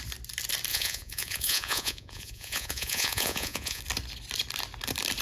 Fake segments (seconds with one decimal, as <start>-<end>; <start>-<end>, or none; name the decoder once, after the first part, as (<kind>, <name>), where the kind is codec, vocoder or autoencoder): 0.7-3.8 (vocoder, Vocos)